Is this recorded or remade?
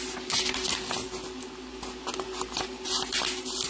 recorded